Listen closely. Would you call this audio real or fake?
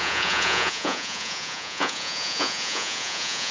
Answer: fake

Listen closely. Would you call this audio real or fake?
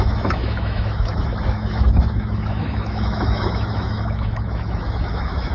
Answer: fake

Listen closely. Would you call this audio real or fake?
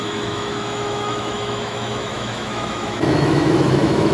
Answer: fake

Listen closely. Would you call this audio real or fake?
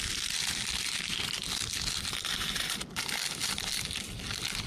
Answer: fake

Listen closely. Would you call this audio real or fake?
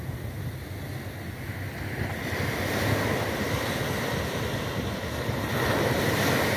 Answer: real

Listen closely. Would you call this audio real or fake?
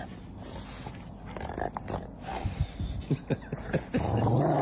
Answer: real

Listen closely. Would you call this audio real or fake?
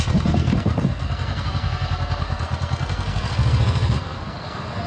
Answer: fake